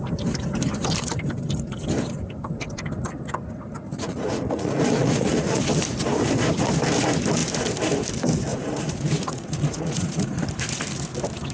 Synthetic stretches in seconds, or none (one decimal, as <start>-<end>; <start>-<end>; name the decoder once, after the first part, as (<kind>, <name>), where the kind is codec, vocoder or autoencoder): 3.9-5.6 (vocoder, Vocos); 8.5-10.5